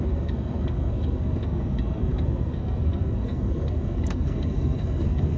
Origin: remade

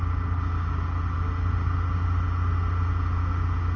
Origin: recorded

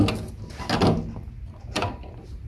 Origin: recorded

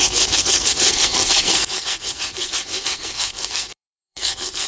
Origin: remade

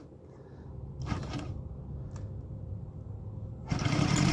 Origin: recorded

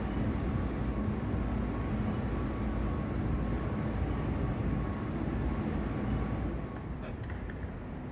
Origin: recorded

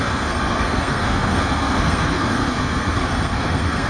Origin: remade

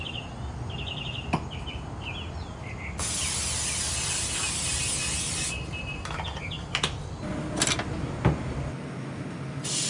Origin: recorded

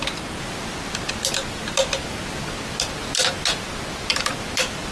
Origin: recorded